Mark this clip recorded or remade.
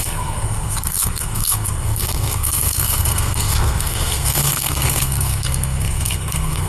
remade